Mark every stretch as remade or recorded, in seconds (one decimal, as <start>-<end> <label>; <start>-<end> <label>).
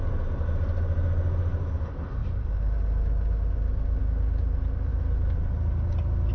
0.0-6.3 recorded